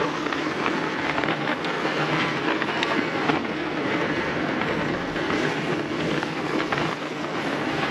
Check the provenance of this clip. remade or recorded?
remade